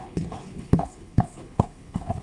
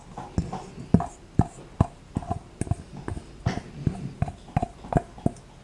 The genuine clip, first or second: second